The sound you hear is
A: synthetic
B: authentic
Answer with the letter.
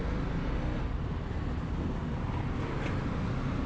B